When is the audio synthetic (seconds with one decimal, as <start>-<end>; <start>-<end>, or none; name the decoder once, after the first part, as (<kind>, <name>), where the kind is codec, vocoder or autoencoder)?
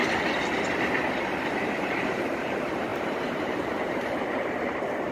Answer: 1.5-5.1 (vocoder, BigVGAN v2)